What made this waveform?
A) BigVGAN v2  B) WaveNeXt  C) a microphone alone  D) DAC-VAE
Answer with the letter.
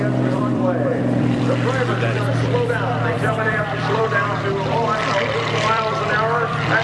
A